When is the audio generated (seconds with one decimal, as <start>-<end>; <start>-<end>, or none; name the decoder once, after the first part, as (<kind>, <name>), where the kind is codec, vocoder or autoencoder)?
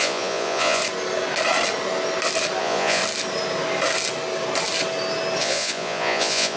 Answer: 0.0-0.8 (vocoder, Vocos); 2.6-3.0; 5.4-6.6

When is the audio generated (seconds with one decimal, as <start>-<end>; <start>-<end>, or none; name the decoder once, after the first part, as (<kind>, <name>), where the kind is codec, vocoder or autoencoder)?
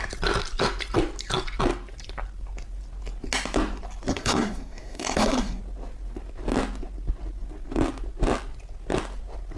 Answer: 4.1-5.6 (codec, SNAC)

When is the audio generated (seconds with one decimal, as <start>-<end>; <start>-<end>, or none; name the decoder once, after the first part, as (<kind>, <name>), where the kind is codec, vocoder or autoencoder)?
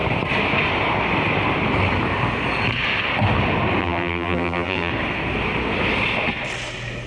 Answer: 3.8-4.9 (vocoder, BigVGAN v2)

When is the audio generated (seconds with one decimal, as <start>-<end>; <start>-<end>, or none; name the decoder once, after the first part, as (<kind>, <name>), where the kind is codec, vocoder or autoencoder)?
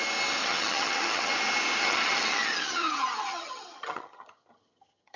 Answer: 0.4-1.3 (vocoder, HiFi-GAN); 1.8-5.2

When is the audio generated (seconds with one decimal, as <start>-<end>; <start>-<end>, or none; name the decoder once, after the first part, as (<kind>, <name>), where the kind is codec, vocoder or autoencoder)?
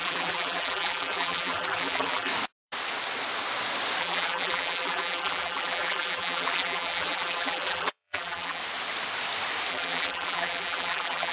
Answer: 0.0-2.3 (vocoder, BigVGAN v2); 4.0-8.6; 9.7-11.3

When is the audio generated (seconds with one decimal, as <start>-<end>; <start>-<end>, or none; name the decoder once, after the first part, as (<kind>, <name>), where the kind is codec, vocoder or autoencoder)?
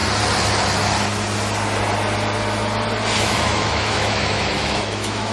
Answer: 3.2-5.3 (autoencoder, DAC-VAE)